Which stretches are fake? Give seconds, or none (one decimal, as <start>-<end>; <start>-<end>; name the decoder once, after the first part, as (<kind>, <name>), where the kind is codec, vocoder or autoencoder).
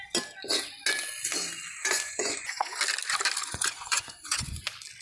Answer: 1.8-2.8 (vocoder, Vocos); 3.4-4.6